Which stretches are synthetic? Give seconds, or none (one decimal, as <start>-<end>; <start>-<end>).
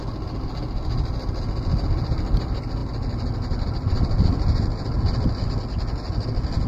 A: none